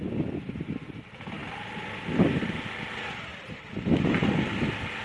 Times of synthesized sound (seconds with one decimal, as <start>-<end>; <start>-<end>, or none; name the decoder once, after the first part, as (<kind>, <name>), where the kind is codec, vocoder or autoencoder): none